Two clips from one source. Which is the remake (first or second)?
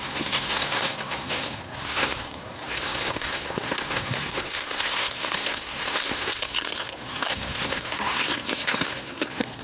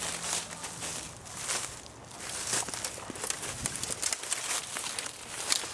first